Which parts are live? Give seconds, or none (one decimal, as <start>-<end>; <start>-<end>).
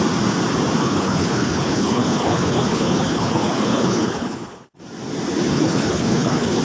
0.0-0.8; 4.8-5.5